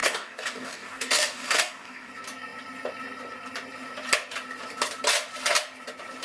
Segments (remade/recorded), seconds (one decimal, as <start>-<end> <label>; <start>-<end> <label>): 0.0-2.1 remade; 2.1-6.2 recorded